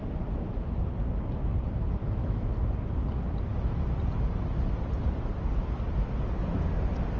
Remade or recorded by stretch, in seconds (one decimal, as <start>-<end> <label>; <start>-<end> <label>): 0.0-2.0 recorded; 2.0-2.5 remade; 2.5-7.2 recorded